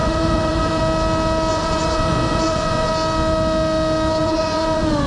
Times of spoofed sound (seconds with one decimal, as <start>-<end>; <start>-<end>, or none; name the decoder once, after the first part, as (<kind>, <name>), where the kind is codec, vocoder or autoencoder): 0.0-0.8 (vocoder, Vocos); 1.5-2.9; 4.2-5.1